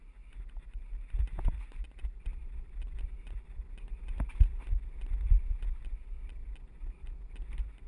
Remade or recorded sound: recorded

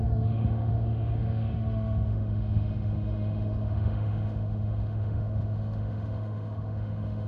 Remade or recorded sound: remade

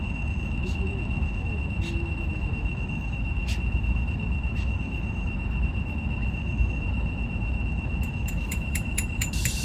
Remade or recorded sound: remade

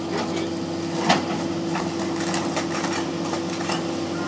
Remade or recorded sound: recorded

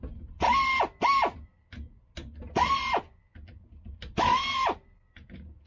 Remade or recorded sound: recorded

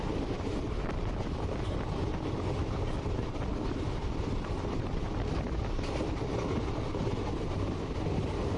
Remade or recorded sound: recorded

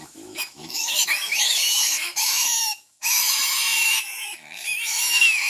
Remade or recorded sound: remade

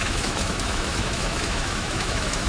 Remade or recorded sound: remade